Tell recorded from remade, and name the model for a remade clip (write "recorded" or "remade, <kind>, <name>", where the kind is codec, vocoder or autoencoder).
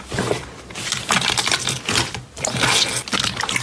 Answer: remade, vocoder, BigVGAN v2